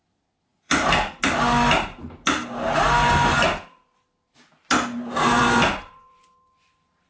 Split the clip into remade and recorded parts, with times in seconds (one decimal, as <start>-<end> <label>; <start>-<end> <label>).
0.0-0.5 recorded; 0.5-1.2 remade; 1.2-5.4 recorded; 5.4-7.1 remade